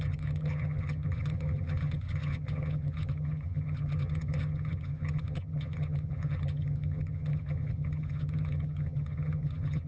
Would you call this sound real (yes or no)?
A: no